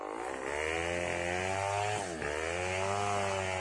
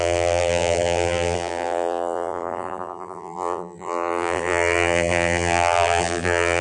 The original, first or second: first